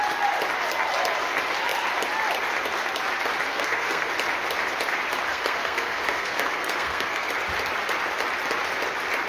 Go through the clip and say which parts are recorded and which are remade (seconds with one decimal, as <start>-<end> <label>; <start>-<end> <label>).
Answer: 0.0-3.5 recorded; 3.5-4.1 remade; 4.1-5.3 recorded; 5.3-7.3 remade; 7.3-9.3 recorded